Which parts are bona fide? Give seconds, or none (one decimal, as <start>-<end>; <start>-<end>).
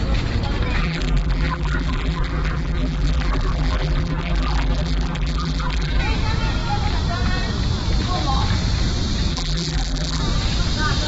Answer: 0.0-0.8; 6.0-9.3; 10.2-11.1